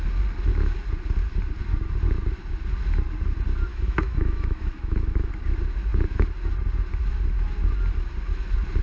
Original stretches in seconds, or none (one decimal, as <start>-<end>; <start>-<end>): 0.0-3.7; 5.3-8.8